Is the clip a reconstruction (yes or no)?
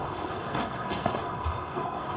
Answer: yes